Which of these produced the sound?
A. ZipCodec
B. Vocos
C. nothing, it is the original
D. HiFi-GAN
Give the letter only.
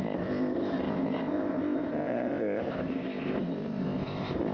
A